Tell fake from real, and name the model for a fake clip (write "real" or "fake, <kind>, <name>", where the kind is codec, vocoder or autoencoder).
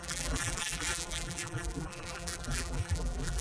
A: fake, vocoder, BigVGAN v2